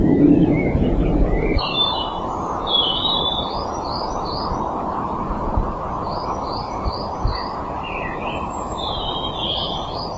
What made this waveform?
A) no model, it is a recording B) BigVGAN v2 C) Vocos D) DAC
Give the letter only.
B